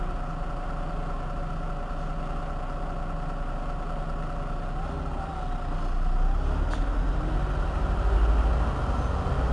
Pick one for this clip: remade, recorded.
recorded